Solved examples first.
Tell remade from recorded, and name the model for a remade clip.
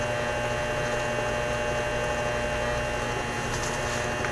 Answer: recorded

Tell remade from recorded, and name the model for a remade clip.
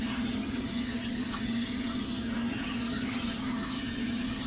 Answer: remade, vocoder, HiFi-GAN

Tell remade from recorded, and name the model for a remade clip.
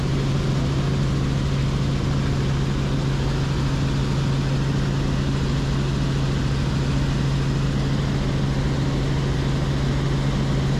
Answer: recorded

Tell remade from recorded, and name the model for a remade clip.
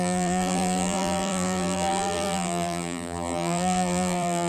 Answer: remade, vocoder, BigVGAN v2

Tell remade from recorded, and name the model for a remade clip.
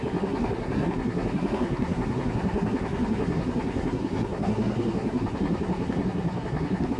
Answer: remade, codec, SNAC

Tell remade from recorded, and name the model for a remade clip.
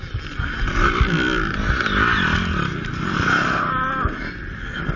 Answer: recorded